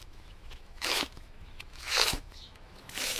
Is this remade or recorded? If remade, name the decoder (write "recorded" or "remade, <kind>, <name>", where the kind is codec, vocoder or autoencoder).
remade, autoencoder, DAC-VAE